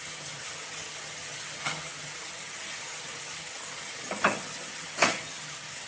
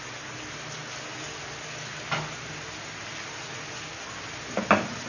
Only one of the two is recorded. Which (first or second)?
second